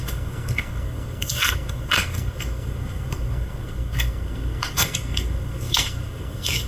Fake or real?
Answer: fake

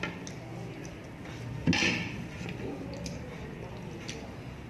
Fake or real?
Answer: real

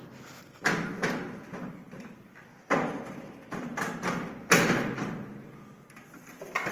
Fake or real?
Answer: real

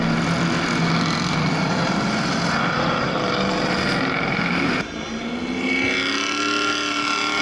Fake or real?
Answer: real